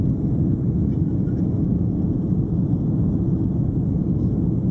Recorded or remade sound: recorded